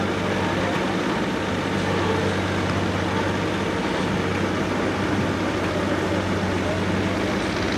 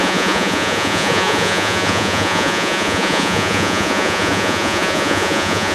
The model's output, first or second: second